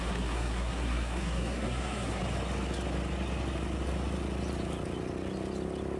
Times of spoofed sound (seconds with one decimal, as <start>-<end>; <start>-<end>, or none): 0.0-2.2